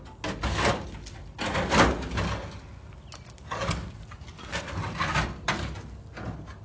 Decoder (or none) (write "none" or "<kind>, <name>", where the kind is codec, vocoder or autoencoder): none